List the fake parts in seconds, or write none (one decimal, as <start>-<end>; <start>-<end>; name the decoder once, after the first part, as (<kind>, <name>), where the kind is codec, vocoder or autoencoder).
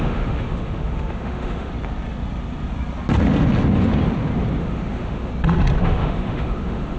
0.0-1.7 (autoencoder, DAC-VAE); 4.6-5.3; 5.8-7.0